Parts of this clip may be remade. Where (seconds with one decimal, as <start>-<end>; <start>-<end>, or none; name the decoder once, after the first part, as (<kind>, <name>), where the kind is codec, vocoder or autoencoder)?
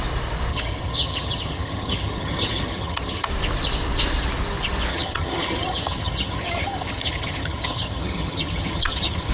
0.5-3.3 (vocoder, HiFi-GAN); 4.9-9.3